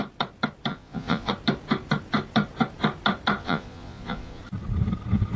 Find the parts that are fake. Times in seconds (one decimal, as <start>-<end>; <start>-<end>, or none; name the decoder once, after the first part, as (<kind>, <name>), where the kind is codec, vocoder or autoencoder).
0.7-1.3 (vocoder, Vocos); 3.4-4.4